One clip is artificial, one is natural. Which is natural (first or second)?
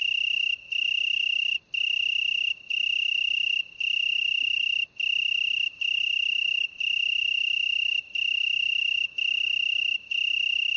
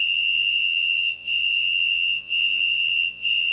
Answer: first